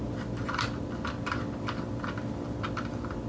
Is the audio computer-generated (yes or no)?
no